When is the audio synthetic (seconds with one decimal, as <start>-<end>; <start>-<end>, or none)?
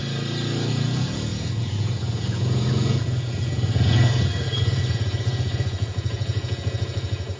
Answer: 0.7-7.4